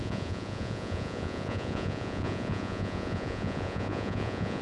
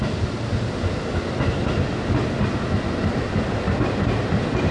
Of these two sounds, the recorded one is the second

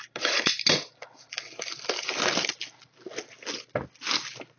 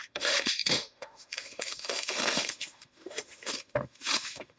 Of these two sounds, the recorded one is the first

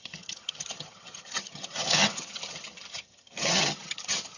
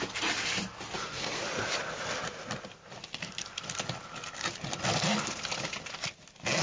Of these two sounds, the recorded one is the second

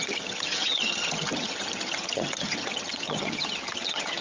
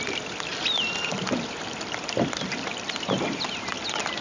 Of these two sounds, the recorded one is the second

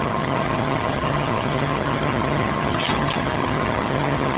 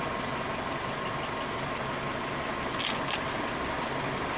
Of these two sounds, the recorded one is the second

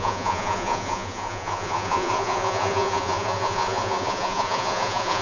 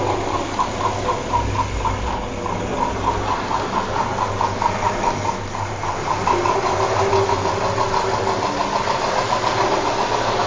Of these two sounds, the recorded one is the second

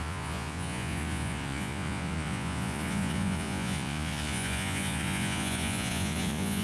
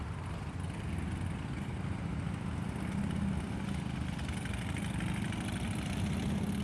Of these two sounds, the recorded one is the second